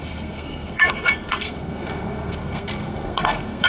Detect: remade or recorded remade